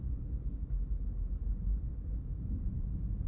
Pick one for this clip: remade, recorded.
recorded